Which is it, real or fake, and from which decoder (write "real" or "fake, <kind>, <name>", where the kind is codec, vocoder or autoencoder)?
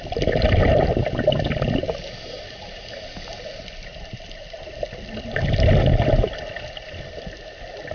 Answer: real